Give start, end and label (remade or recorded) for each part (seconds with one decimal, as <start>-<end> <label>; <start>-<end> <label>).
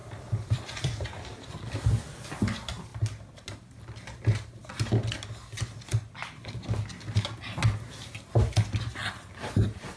0.0-1.5 remade; 1.5-10.0 recorded